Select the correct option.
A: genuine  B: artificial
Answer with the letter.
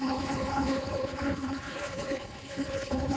B